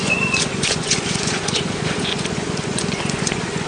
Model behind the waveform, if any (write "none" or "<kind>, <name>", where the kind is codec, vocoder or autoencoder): vocoder, Vocos